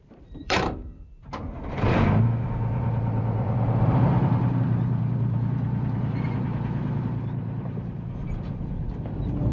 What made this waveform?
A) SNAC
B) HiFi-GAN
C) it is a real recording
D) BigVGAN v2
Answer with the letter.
D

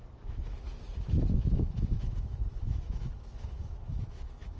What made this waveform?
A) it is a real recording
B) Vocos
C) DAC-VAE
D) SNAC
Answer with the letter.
C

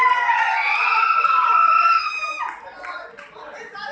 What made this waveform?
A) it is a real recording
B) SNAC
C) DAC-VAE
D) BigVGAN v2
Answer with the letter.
A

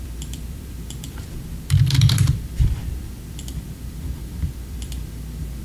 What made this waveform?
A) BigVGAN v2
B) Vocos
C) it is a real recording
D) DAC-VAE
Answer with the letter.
A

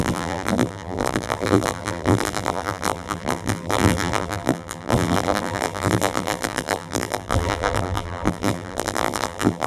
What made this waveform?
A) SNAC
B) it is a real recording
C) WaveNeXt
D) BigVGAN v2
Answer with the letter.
D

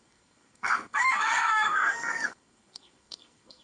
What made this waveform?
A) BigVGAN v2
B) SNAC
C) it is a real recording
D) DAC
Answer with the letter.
B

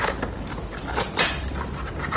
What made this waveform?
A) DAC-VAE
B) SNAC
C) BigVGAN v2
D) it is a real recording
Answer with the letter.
D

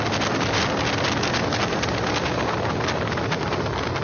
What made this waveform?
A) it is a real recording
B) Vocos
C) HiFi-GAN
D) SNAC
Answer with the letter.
A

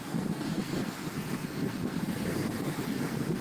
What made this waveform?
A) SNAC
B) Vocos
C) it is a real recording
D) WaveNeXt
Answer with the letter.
A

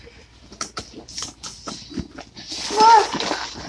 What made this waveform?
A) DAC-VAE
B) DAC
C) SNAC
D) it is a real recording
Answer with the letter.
D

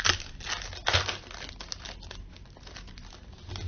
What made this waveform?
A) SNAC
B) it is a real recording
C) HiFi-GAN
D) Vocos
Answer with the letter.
B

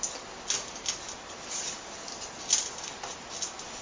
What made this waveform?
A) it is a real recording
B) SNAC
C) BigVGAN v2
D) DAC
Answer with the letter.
A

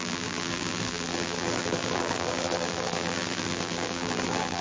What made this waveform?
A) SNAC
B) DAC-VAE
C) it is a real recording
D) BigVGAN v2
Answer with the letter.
D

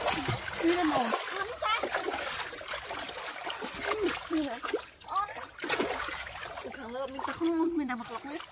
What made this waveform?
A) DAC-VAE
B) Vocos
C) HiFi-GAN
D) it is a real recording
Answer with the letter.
D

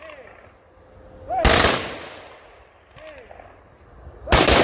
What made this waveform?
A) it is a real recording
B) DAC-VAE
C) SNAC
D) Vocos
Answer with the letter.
A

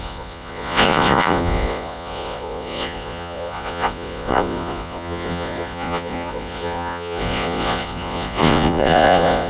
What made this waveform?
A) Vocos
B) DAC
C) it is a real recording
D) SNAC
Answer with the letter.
A